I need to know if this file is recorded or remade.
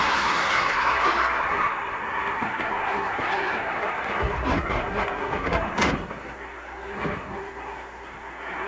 remade